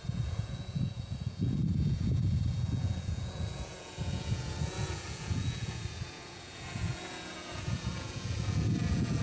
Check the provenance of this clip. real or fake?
fake